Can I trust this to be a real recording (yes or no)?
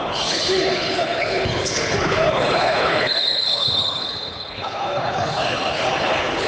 no